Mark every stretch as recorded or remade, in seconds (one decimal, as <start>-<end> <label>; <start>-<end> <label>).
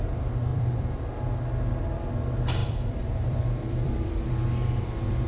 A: 0.0-0.5 recorded; 0.5-1.1 remade; 1.1-2.6 recorded; 2.6-4.3 remade; 4.3-5.3 recorded